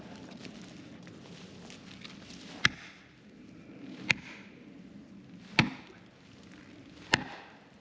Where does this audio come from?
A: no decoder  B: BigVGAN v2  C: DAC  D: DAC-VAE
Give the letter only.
A